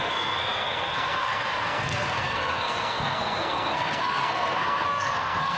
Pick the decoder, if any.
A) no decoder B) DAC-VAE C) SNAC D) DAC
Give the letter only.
C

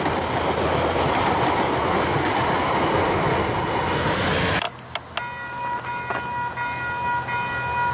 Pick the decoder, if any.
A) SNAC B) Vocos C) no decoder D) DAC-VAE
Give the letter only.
C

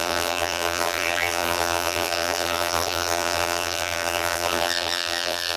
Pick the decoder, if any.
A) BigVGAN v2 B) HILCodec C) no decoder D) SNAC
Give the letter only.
A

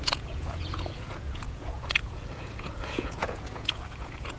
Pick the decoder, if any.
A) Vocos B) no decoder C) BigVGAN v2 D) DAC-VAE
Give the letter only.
A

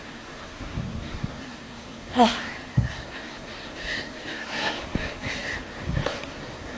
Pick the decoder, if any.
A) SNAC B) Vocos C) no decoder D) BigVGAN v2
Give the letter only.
A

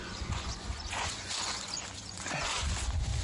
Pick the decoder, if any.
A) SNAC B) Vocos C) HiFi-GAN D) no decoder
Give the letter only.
B